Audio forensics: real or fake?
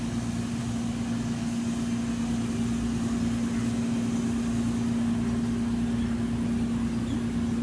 real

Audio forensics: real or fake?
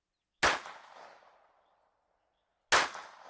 real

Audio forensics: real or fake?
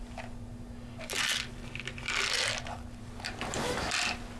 real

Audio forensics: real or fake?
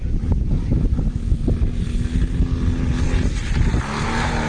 real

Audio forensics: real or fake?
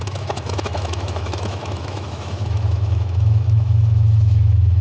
fake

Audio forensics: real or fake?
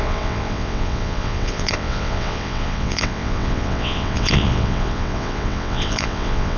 fake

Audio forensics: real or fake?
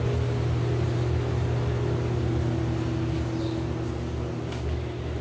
real